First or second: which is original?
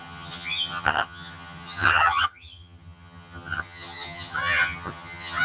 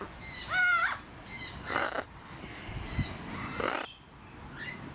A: second